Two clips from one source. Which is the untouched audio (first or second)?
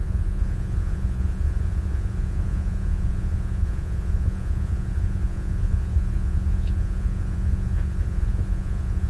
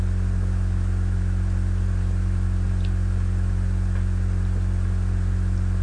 second